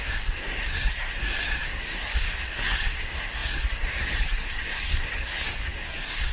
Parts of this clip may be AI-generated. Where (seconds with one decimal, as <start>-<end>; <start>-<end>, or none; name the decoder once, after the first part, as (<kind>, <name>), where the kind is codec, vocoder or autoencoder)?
0.0-6.3 (codec, SNAC)